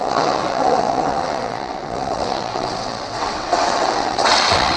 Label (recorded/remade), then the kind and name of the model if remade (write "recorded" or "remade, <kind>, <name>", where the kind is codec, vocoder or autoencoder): remade, vocoder, WaveNeXt